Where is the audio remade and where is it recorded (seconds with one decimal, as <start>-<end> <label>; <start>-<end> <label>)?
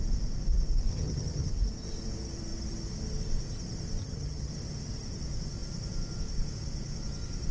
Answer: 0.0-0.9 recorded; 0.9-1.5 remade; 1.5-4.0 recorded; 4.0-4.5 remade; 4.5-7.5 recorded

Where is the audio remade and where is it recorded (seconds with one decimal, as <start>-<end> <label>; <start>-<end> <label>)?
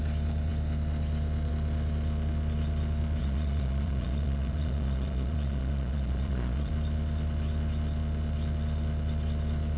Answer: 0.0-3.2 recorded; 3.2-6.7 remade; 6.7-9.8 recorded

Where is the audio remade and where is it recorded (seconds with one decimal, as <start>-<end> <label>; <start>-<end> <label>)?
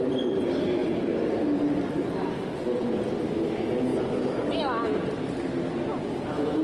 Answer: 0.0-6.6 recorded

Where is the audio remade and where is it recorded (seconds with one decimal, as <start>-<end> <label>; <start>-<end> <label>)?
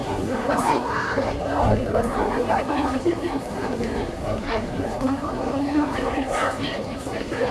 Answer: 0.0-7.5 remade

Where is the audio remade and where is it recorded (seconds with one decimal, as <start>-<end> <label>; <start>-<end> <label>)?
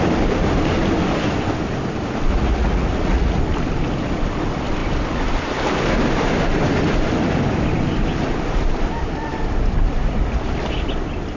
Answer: 0.0-2.3 recorded; 2.3-3.4 remade; 3.4-11.4 recorded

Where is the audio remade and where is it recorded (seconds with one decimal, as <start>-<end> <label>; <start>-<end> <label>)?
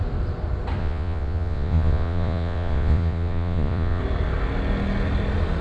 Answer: 0.0-0.8 recorded; 0.8-4.0 remade; 4.0-5.6 recorded